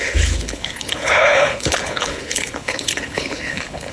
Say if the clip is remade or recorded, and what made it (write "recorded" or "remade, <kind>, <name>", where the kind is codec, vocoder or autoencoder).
remade, codec, HILCodec